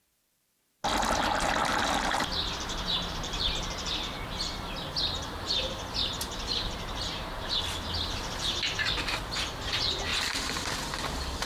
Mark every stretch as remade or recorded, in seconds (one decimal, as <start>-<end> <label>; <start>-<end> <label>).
0.0-1.6 recorded; 1.6-4.1 remade; 4.1-6.0 recorded; 6.0-7.6 remade; 7.6-11.5 recorded